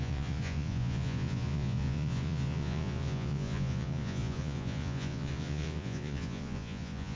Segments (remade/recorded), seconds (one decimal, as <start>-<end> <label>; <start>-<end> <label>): 0.0-7.2 remade

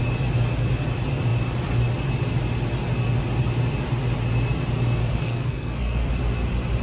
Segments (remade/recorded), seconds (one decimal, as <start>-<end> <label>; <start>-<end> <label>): 0.0-5.0 recorded; 5.0-6.1 remade; 6.1-6.8 recorded

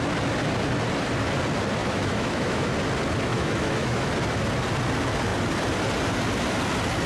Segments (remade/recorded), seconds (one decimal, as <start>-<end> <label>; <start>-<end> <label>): 0.0-1.8 recorded; 1.8-2.7 remade; 2.7-3.3 recorded; 3.3-4.1 remade; 4.1-7.1 recorded

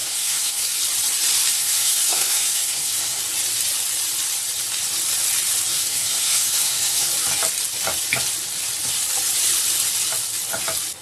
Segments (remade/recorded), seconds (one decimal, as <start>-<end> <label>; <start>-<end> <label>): 0.0-0.8 remade; 0.8-1.5 recorded; 1.5-3.2 remade; 3.2-5.7 recorded; 5.7-7.1 remade; 7.1-11.0 recorded

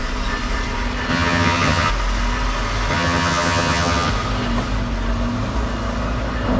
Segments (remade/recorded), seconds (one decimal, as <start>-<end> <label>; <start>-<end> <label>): 0.0-1.1 recorded; 1.1-1.9 remade; 1.9-2.9 recorded; 2.9-4.1 remade; 4.1-6.6 recorded

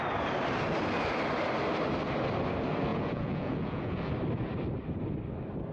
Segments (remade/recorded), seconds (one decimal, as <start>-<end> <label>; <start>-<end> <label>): 0.0-2.9 recorded; 2.9-4.1 remade; 4.1-5.7 recorded

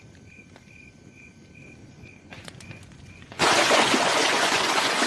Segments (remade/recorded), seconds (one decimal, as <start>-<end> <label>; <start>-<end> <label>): 0.0-1.8 recorded; 1.8-5.1 remade